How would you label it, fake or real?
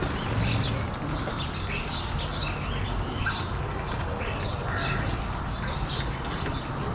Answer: real